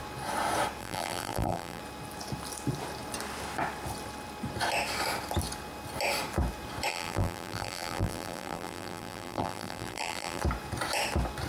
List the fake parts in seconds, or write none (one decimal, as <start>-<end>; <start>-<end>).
0.8-1.8; 6.9-10.4